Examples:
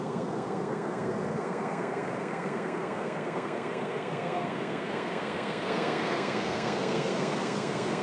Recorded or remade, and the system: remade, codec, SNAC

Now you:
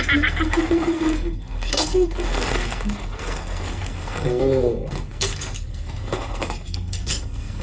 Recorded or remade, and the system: remade, codec, SNAC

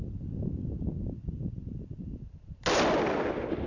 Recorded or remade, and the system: recorded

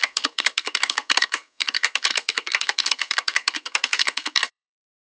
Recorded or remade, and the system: remade, codec, SNAC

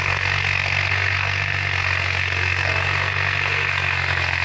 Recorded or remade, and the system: remade, codec, SNAC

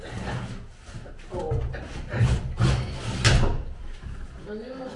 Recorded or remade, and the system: recorded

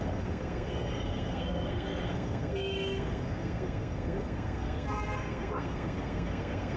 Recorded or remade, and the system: remade, codec, SNAC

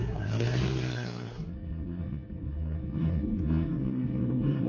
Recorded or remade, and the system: remade, codec, SNAC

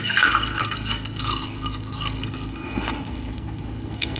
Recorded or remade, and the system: remade, codec, SNAC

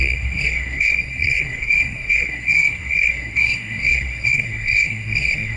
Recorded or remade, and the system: remade, codec, SNAC